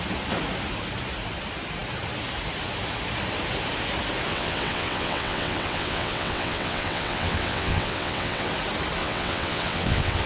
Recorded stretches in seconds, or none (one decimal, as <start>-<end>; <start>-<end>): 0.0-4.3; 8.5-9.0

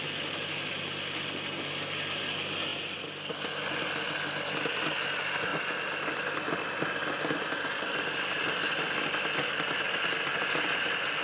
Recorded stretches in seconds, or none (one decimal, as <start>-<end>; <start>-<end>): 0.0-11.2

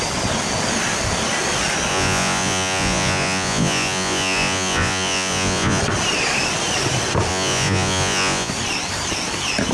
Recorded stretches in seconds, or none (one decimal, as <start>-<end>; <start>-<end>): 0.0-1.9; 5.8-7.3; 8.5-9.7